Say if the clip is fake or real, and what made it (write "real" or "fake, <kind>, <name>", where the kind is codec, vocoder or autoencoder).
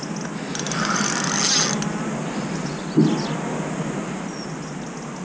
real